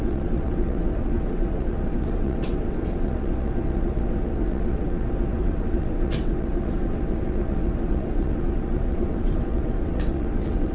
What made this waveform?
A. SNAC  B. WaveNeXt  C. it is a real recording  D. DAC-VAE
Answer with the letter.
B